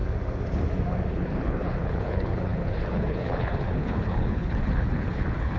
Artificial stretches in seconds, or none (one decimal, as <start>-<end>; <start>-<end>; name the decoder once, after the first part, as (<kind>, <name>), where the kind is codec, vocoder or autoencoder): 1.1-5.6 (codec, HILCodec)

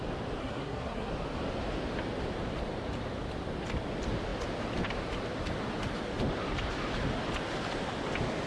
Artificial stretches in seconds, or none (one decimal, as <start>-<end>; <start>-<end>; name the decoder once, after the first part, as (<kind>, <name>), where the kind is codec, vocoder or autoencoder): 0.4-1.1 (codec, SNAC)